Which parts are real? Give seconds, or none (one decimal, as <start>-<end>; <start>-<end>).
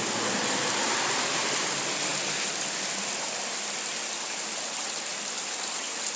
0.0-6.2